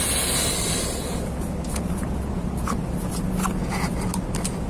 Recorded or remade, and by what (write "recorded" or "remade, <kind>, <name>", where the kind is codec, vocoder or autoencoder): recorded